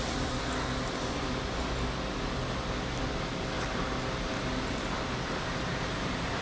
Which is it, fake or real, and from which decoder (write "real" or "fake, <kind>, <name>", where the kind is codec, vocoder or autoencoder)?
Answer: real